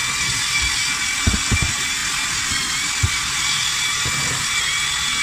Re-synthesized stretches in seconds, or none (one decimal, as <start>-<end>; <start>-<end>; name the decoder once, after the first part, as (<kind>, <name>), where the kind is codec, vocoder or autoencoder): none